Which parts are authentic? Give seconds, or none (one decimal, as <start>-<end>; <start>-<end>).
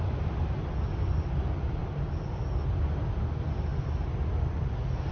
0.0-5.1